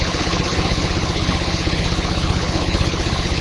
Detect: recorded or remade remade